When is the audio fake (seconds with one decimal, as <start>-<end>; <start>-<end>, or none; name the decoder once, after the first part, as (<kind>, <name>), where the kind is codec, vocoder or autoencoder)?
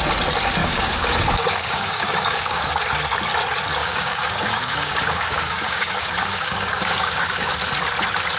0.6-2.7 (codec, DAC); 3.7-7.5